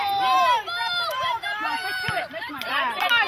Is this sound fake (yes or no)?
yes